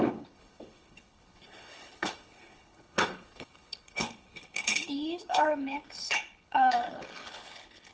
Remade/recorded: remade